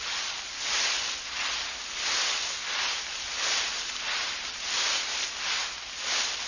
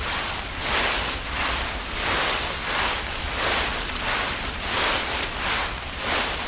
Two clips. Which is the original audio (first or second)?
first